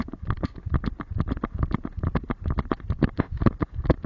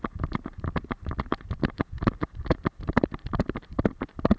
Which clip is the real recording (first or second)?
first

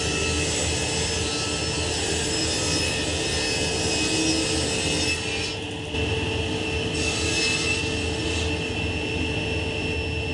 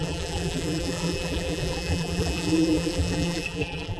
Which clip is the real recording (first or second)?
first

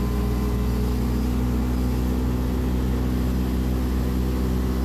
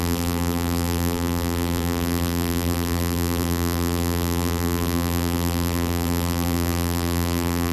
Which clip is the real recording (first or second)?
first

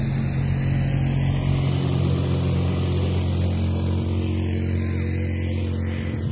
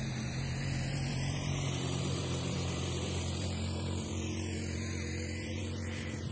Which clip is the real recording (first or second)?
first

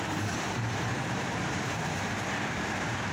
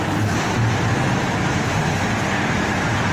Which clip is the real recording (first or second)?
second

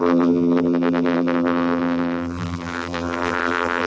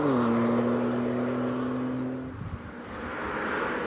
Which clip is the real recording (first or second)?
second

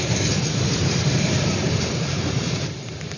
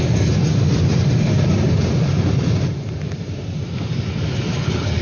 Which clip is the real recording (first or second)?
second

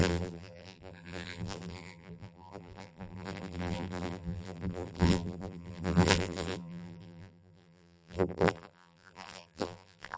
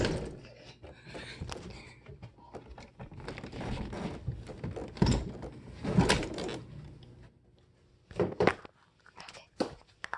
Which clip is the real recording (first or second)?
second